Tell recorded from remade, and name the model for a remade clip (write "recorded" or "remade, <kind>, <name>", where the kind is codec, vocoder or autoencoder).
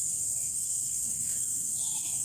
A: remade, codec, SNAC